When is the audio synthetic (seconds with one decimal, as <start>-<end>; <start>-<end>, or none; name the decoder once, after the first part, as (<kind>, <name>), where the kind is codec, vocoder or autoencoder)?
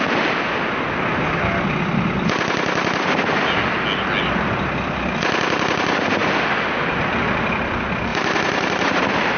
8.1-9.0 (vocoder, BigVGAN v2)